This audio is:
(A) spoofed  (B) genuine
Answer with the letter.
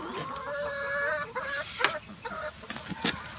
B